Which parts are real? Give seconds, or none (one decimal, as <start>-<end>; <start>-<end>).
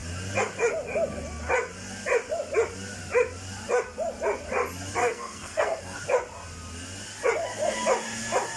0.0-5.0; 6.0-8.6